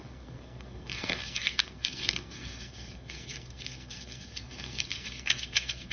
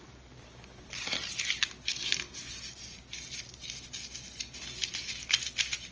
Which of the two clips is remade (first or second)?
first